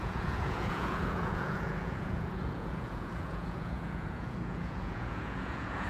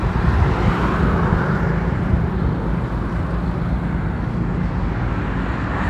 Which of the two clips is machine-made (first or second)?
first